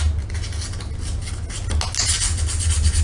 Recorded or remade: recorded